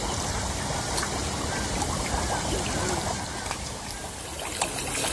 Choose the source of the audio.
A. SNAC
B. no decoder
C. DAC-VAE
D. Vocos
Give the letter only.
B